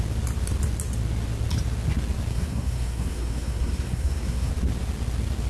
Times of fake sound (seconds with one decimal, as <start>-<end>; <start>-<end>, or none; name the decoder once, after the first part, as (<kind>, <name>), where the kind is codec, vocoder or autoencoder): 2.3-4.5 (codec, SNAC)